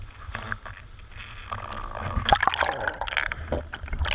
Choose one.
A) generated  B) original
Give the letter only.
B